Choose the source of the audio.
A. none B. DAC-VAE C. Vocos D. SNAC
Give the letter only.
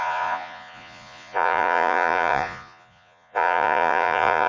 C